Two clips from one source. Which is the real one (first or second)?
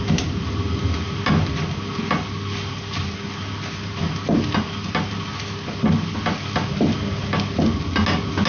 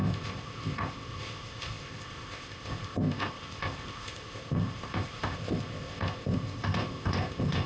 first